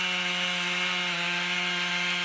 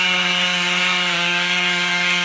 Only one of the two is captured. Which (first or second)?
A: first